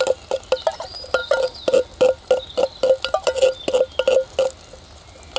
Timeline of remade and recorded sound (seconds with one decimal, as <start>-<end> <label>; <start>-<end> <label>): 0.0-5.4 recorded